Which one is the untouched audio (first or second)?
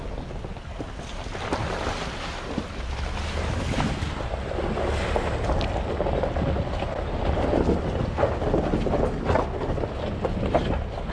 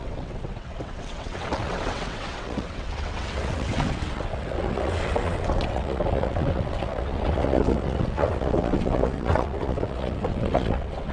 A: first